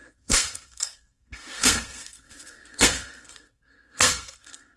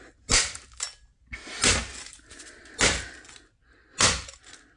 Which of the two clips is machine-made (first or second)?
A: first